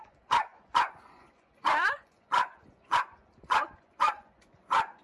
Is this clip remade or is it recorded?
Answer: remade